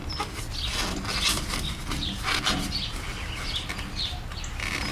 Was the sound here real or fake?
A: real